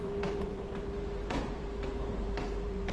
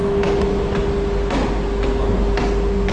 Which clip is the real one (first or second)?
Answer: second